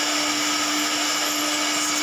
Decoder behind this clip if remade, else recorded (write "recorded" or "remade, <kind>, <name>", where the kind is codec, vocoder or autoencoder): recorded